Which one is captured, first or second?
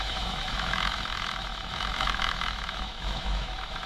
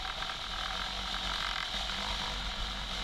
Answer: second